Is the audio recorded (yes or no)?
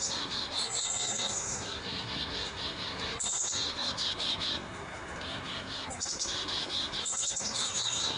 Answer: no